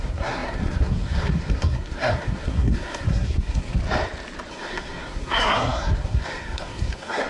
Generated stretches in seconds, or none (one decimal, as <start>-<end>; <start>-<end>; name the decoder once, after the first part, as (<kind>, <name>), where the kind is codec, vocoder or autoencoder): 0.0-3.8 (codec, SNAC); 4.5-7.3